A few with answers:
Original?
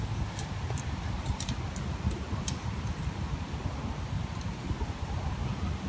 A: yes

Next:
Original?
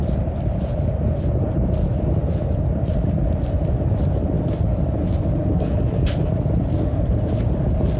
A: yes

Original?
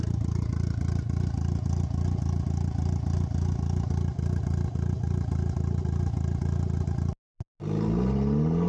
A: yes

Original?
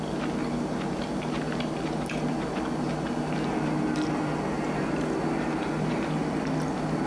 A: yes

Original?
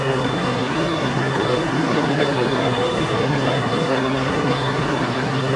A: no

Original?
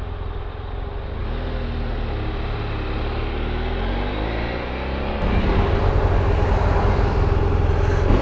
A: yes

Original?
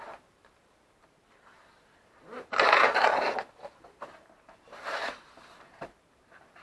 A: no